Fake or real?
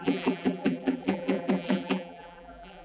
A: fake